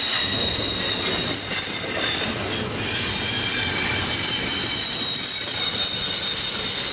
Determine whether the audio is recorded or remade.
recorded